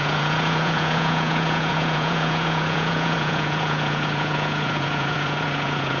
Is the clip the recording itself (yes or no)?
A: no